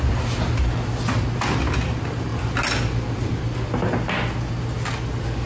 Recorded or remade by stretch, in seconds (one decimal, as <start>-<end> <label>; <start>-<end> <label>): 0.0-5.5 recorded